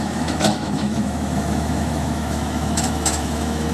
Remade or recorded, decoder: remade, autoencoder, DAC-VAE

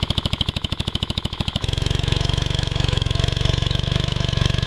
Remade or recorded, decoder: remade, autoencoder, DAC-VAE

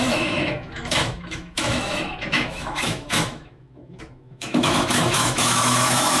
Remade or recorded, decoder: remade, autoencoder, DAC-VAE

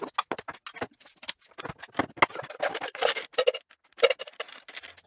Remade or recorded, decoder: recorded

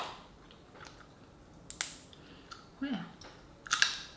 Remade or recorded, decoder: recorded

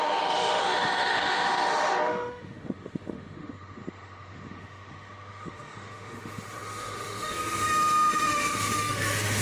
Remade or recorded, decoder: remade, autoencoder, DAC-VAE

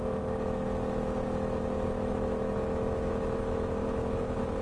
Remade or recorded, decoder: remade, autoencoder, DAC-VAE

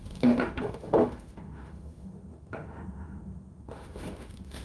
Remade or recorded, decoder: remade, autoencoder, DAC-VAE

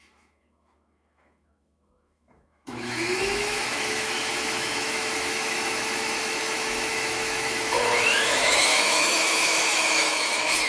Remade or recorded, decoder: remade, autoencoder, DAC-VAE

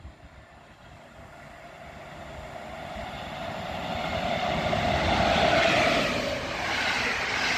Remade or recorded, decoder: recorded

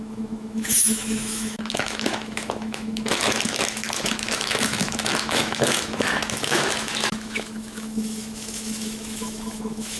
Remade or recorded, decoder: remade, autoencoder, DAC-VAE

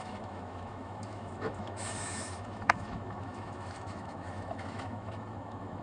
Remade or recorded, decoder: remade, autoencoder, DAC-VAE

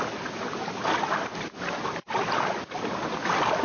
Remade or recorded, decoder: recorded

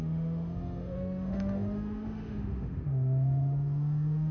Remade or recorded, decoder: remade, autoencoder, DAC-VAE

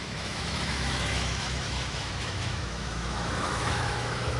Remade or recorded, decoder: remade, autoencoder, DAC-VAE